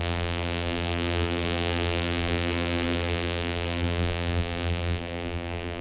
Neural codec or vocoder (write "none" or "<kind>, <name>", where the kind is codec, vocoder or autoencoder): vocoder, BigVGAN v2